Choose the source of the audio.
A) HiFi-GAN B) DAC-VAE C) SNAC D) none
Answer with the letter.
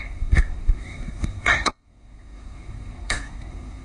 C